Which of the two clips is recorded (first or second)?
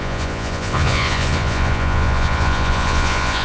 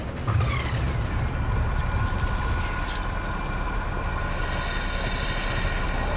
second